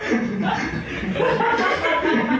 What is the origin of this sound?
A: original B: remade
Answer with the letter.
A